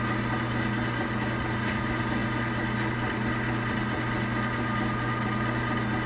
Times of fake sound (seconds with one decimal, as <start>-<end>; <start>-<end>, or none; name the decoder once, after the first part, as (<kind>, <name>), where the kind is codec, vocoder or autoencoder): none